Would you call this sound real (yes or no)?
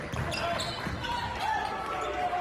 yes